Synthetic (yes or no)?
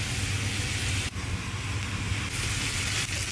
no